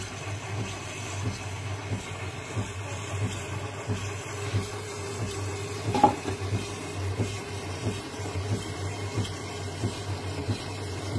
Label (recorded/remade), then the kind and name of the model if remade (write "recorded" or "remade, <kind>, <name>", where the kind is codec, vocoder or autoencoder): remade, vocoder, BigVGAN v2